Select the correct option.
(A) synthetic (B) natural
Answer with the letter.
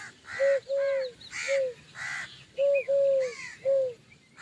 B